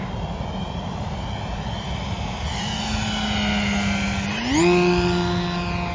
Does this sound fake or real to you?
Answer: real